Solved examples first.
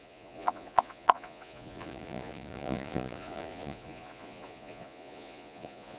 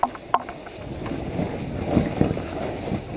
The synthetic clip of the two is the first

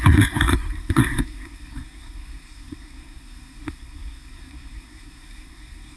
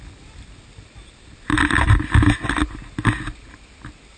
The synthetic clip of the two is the first